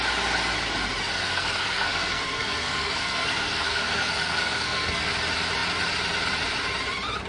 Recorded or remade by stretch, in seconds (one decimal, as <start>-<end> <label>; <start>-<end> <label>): 0.0-1.1 recorded; 1.1-5.1 remade; 5.1-7.3 recorded